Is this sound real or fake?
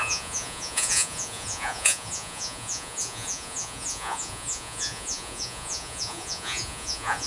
fake